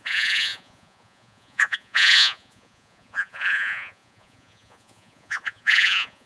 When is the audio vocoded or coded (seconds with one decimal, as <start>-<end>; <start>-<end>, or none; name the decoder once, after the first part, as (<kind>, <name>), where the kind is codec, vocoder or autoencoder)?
0.0-6.3 (vocoder, Vocos)